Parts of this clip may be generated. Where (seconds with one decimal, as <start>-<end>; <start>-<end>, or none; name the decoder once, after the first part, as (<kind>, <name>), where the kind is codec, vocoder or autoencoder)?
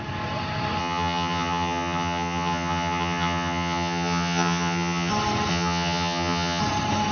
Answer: 0.8-5.1 (vocoder, HiFi-GAN); 5.5-6.6